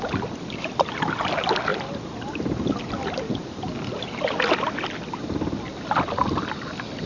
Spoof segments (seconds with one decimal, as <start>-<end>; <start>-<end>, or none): 1.7-2.4